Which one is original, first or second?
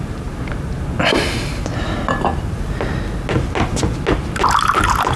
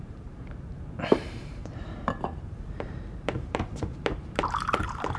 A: first